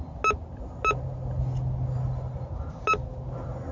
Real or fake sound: real